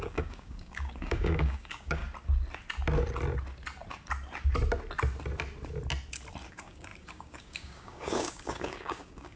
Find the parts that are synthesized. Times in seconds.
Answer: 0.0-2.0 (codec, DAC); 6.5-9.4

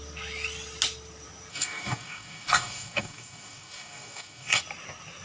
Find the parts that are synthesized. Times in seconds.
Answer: 1.5-4.6 (codec, DAC)

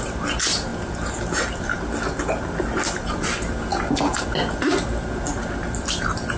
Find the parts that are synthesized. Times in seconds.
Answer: none

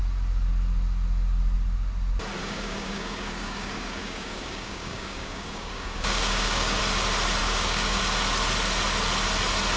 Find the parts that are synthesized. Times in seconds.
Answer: 2.4-6.8 (codec, DAC); 7.4-8.0

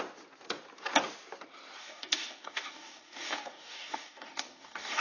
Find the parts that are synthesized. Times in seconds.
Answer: 1.8-5.0 (codec, DAC)

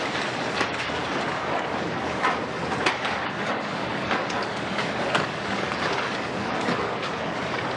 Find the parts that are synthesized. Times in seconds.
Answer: 0.0-7.8 (codec, DAC)

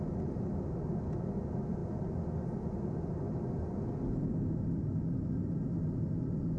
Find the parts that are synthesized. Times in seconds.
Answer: none